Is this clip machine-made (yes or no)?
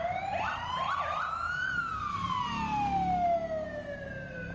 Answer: no